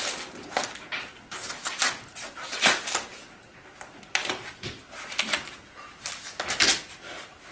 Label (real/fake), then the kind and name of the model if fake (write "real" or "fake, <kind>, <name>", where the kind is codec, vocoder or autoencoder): real